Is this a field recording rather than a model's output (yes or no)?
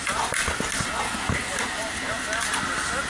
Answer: yes